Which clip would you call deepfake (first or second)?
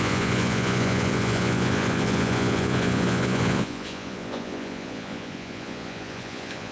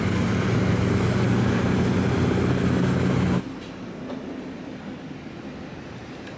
first